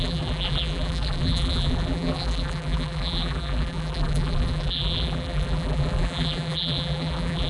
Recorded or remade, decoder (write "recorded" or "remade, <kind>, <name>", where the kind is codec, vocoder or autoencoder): remade, vocoder, BigVGAN v2